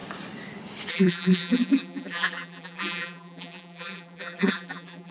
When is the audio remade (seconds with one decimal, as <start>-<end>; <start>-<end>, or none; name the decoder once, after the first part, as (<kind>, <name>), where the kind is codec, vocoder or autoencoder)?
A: 0.9-5.1 (vocoder, BigVGAN v2)